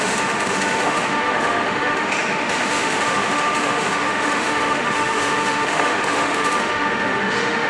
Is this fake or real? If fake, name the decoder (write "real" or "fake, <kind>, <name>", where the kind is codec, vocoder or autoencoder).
fake, autoencoder, DAC-VAE